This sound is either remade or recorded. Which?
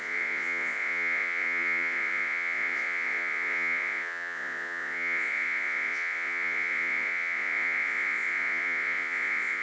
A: remade